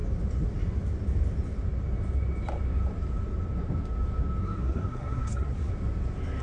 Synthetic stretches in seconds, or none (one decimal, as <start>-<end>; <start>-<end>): 4.4-5.7